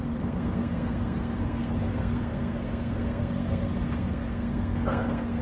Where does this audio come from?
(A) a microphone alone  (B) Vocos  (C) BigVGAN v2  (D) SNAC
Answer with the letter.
D